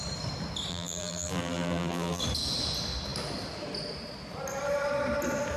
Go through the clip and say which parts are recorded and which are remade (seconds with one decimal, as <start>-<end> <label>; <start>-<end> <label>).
0.0-0.7 recorded; 0.7-2.2 remade; 2.2-5.6 recorded